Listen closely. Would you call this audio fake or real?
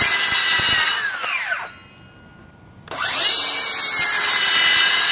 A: real